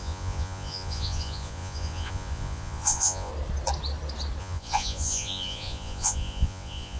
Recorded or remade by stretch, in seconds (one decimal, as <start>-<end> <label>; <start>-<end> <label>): 0.0-3.3 remade; 3.3-4.4 recorded; 4.4-7.0 remade